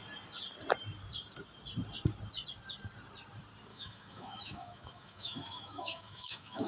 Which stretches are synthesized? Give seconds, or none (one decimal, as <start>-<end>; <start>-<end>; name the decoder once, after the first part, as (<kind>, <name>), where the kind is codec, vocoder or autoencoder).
3.7-6.7 (autoencoder, DAC-VAE)